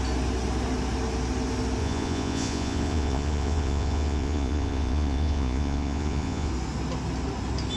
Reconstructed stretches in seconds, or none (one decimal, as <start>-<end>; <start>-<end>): 1.8-6.5